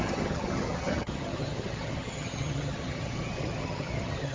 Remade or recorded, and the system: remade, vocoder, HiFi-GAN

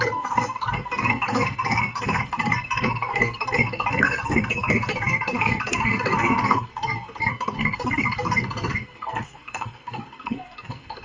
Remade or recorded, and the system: remade, codec, SNAC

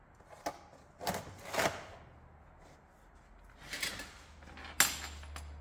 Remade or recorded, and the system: recorded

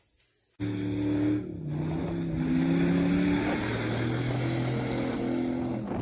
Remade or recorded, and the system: recorded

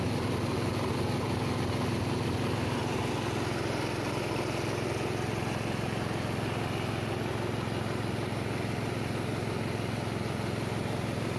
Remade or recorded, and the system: recorded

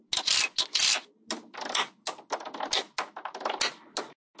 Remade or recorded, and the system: recorded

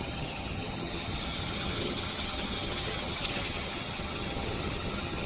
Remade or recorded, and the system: remade, vocoder, HiFi-GAN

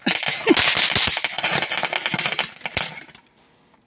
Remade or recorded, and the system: recorded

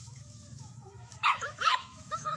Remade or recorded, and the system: remade, autoencoder, DAC-VAE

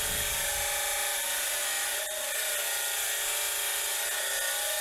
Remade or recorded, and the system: recorded